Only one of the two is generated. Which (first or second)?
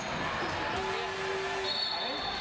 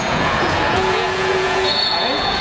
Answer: second